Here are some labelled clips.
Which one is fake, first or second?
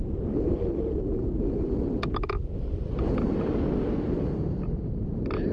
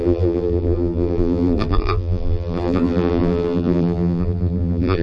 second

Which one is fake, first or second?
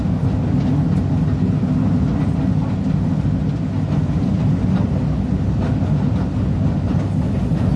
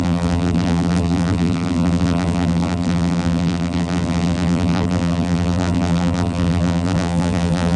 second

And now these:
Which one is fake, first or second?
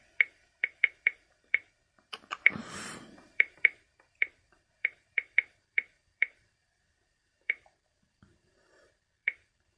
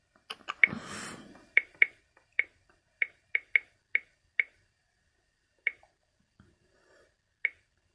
first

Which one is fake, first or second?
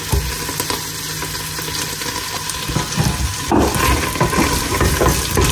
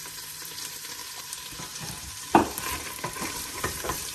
second